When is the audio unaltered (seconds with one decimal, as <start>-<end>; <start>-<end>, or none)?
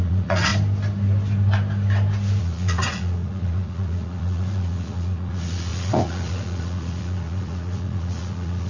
0.5-2.4